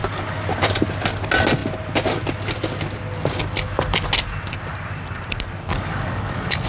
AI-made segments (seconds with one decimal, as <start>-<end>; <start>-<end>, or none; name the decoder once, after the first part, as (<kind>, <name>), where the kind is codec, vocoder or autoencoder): 0.0-0.5 (codec, DAC); 5.7-6.7